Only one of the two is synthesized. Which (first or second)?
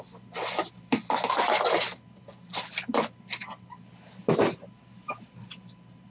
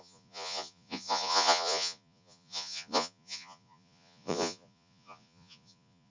second